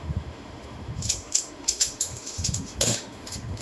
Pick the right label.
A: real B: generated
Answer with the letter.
B